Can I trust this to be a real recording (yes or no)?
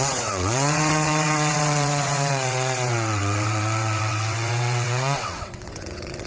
no